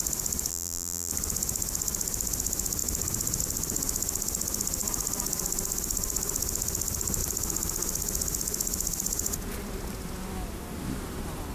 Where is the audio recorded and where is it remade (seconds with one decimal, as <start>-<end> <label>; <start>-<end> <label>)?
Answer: 0.0-0.5 recorded; 0.5-1.1 remade; 1.1-11.5 recorded